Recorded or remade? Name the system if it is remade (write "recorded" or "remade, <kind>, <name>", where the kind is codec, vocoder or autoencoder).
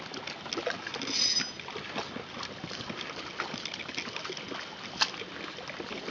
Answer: recorded